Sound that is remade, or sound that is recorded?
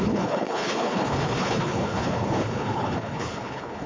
remade